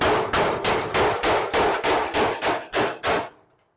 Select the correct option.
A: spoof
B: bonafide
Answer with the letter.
B